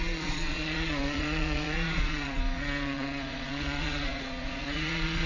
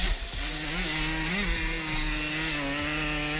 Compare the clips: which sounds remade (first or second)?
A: first